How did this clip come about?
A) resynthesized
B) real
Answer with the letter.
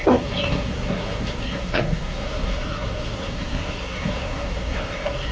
A